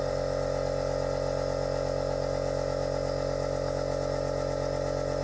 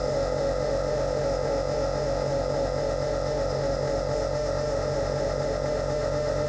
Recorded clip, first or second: first